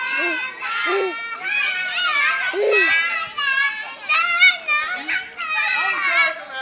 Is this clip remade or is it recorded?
recorded